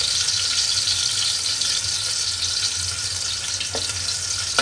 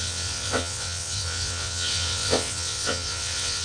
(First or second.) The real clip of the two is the first